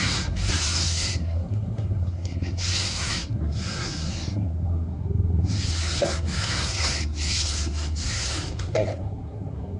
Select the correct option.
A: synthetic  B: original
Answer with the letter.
A